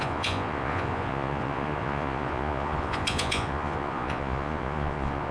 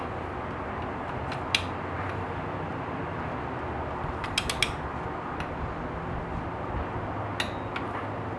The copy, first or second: first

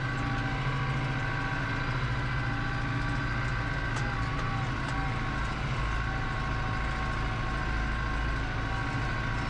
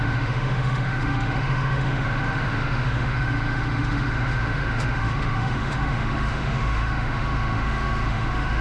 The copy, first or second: second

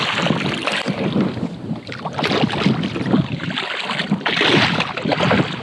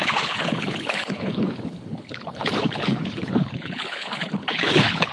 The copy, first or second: second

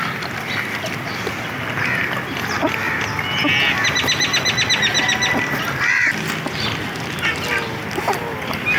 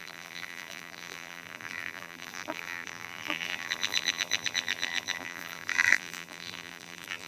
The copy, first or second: second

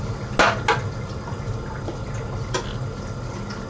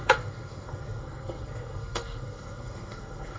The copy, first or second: second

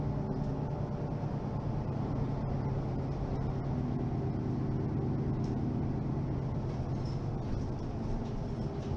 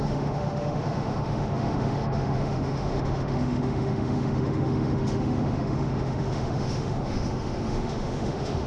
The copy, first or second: second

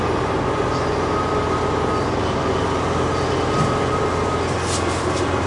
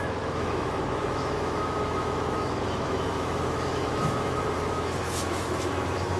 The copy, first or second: second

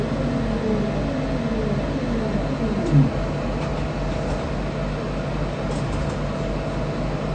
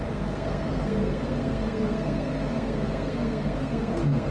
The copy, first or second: second